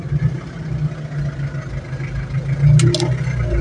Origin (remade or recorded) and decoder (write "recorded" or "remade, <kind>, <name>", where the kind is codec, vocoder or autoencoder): recorded